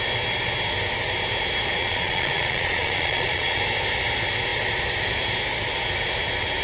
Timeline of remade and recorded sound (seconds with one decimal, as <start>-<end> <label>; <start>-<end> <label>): 0.0-1.8 recorded; 1.8-3.6 remade; 3.6-6.6 recorded